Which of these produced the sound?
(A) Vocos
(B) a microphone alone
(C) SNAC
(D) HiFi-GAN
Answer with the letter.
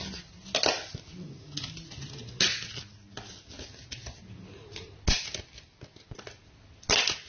B